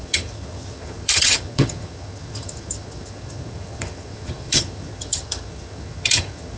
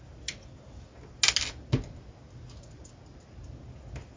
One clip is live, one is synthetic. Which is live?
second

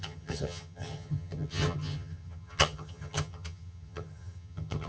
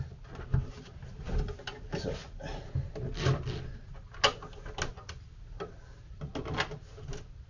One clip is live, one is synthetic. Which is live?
second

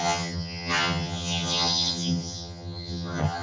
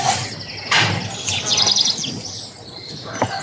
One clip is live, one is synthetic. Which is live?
second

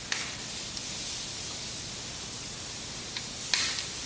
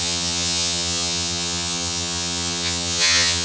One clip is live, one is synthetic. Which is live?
first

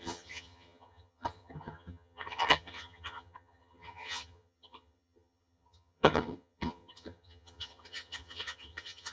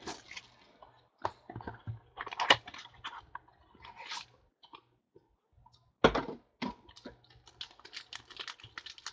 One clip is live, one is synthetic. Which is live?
second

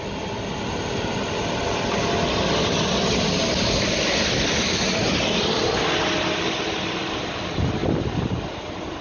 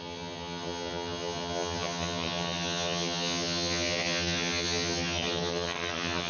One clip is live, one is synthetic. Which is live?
first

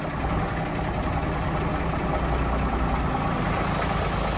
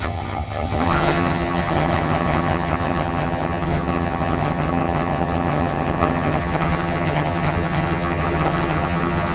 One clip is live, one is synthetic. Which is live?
first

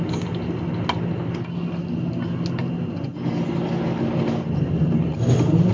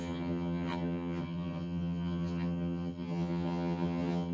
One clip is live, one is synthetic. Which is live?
first